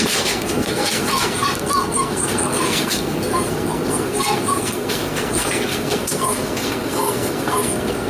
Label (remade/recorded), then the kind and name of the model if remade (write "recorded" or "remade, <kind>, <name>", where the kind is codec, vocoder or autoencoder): remade, codec, SNAC